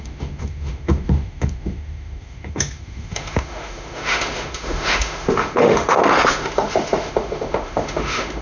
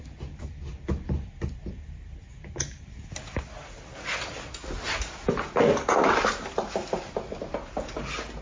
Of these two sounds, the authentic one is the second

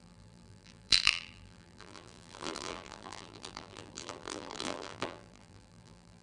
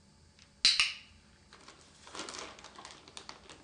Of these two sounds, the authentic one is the second